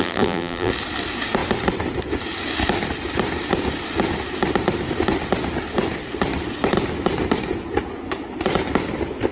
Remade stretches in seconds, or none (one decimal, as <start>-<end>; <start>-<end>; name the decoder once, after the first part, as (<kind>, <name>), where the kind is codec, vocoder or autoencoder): 0.0-0.7 (vocoder, BigVGAN v2)